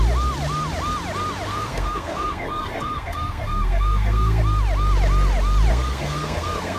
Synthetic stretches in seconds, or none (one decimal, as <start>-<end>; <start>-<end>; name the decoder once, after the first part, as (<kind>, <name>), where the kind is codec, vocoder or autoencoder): 1.5-4.4 (codec, SNAC); 5.7-6.8